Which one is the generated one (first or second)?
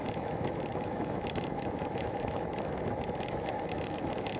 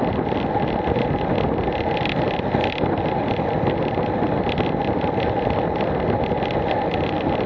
first